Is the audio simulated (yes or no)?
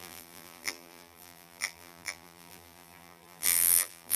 yes